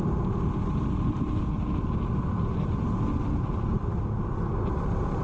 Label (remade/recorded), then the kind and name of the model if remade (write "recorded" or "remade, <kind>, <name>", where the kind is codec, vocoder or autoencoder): recorded